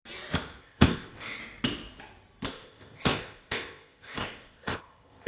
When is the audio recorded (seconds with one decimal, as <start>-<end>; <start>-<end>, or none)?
0.0-0.6; 1.4-2.5